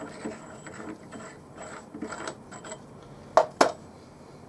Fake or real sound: real